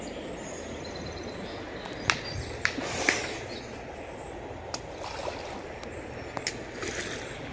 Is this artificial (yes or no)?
no